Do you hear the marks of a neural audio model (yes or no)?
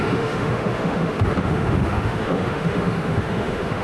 yes